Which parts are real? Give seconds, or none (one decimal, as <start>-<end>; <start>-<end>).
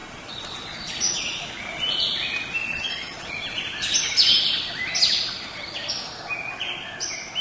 1.4-2.6; 3.3-7.4